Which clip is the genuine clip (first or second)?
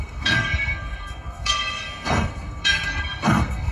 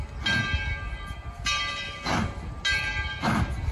second